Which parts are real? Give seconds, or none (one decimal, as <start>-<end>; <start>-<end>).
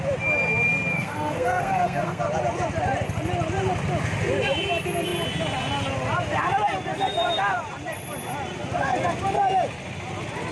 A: 0.0-0.9; 2.2-10.5